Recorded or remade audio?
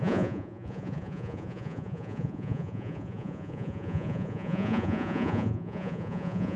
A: remade